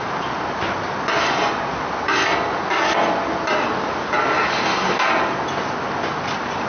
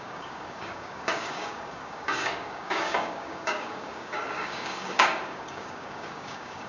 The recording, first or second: first